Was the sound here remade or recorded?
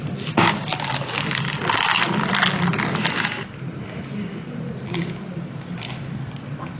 recorded